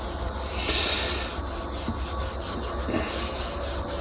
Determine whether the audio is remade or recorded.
recorded